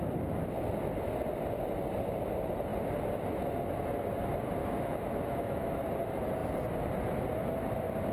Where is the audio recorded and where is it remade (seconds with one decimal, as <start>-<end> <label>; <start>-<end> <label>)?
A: 0.0-4.6 recorded; 4.6-5.8 remade; 5.8-8.1 recorded